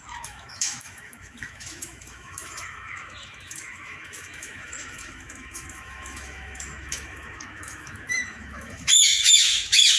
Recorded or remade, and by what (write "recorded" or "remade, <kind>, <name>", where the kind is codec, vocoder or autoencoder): remade, autoencoder, DAC-VAE